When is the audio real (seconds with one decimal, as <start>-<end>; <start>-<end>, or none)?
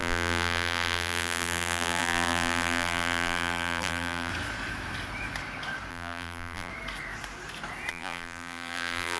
4.3-5.9; 6.7-7.9